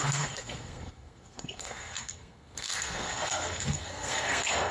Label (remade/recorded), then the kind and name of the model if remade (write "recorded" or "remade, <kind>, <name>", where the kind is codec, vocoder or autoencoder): remade, codec, SNAC